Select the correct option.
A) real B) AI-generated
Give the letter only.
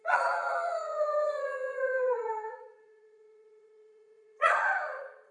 B